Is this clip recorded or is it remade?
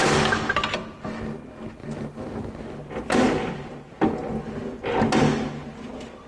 recorded